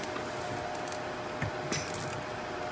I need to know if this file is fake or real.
real